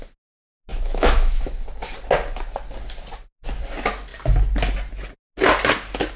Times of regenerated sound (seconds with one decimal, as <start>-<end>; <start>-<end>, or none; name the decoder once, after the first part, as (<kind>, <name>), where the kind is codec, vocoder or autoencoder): 0.7-1.5 (autoencoder, DAC-VAE)